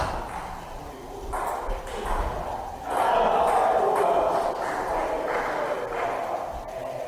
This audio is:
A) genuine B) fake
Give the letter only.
A